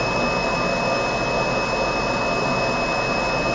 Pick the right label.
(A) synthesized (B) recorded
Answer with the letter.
B